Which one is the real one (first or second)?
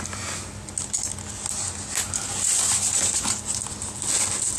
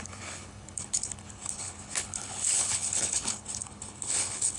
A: first